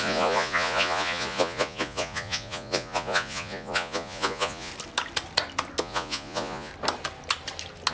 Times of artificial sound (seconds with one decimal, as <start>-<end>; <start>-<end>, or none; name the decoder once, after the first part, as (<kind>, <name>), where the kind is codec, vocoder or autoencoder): 0.0-4.7 (vocoder, Vocos); 5.8-6.7

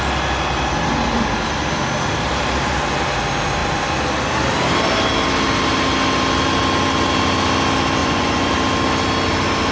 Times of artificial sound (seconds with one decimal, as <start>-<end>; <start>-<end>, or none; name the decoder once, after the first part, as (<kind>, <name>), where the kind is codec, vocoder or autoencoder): 8.0-8.5 (vocoder, Vocos)

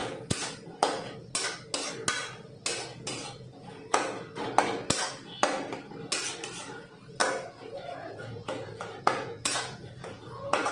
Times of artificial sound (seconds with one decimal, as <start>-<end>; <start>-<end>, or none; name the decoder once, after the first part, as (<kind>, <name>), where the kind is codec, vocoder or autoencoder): 0.0-1.2 (vocoder, Vocos); 2.9-4.3; 7.2-10.7